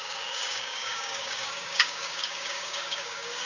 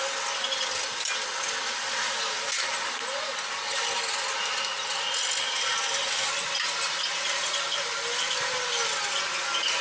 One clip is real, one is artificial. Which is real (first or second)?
second